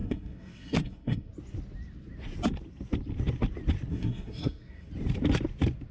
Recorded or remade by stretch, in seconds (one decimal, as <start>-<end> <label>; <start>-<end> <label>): 0.0-1.3 remade; 1.3-3.9 recorded; 3.9-4.9 remade; 4.9-5.9 recorded

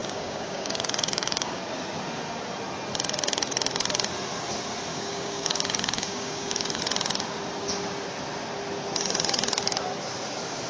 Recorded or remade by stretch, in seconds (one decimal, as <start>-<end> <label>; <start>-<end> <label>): 0.0-1.6 remade; 1.6-4.9 recorded; 4.9-6.8 remade; 6.8-10.7 recorded

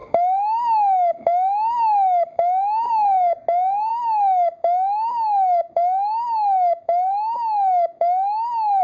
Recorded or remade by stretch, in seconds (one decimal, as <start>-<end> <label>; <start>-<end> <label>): 0.0-2.9 remade; 2.9-3.9 recorded; 3.9-8.8 remade

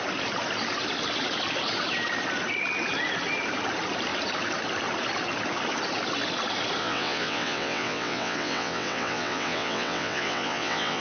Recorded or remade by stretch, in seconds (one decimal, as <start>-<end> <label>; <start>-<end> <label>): 0.0-6.8 recorded; 6.8-11.0 remade

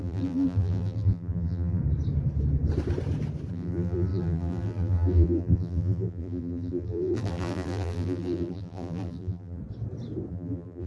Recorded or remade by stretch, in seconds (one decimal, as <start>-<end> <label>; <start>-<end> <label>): 0.0-1.8 remade; 1.8-3.5 recorded; 3.5-9.6 remade; 9.6-10.3 recorded; 10.3-10.9 remade